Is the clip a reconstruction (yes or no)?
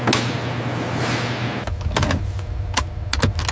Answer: no